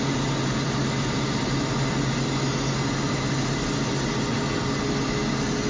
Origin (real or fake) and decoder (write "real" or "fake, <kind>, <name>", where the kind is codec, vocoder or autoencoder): real